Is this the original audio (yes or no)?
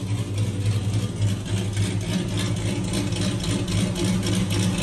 yes